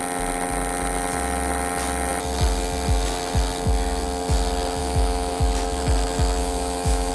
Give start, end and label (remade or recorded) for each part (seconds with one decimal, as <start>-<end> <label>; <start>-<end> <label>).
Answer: 0.0-4.8 recorded; 4.8-5.4 remade; 5.4-6.4 recorded; 6.4-7.1 remade